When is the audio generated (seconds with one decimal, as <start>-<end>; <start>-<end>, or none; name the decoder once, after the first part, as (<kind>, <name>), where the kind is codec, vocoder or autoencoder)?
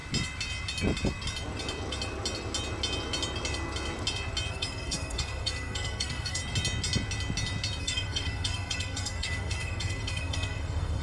4.5-6.4 (codec, SNAC); 7.8-11.0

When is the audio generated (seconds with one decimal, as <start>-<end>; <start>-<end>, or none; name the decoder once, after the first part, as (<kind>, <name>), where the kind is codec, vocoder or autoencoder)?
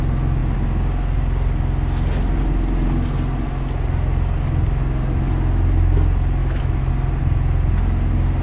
6.4-6.9 (autoencoder, DAC-VAE)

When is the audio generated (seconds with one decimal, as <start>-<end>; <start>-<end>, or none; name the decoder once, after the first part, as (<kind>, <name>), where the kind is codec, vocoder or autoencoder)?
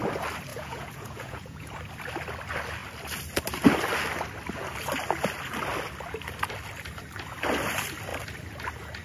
0.5-1.7 (vocoder, Vocos)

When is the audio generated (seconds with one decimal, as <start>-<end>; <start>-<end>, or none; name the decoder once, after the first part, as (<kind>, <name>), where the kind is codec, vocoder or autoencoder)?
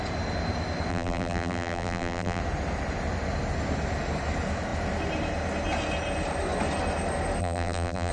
0.9-2.4 (vocoder, BigVGAN v2); 7.4-8.1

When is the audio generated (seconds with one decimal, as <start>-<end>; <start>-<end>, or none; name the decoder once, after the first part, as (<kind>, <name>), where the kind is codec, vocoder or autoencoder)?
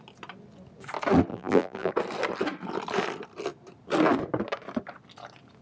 1.3-1.9 (vocoder, BigVGAN v2)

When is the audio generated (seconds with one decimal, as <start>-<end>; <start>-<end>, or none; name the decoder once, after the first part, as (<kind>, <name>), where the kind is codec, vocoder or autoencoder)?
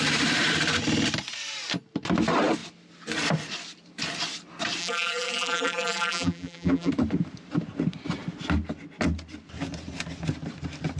4.8-6.9 (vocoder, BigVGAN v2)